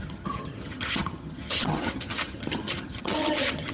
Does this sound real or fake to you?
fake